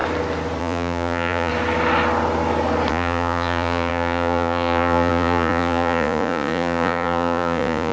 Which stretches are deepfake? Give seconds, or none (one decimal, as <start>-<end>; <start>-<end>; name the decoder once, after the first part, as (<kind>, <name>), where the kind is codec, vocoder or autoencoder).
0.6-1.5 (vocoder, Vocos); 2.9-7.9